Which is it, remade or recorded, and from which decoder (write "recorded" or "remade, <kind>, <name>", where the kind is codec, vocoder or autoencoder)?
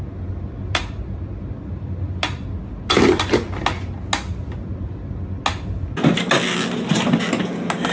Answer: recorded